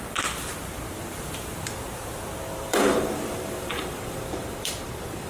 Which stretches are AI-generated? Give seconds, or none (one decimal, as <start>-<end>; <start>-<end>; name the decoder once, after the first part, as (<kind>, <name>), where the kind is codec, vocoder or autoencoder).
2.5-5.3 (vocoder, BigVGAN v2)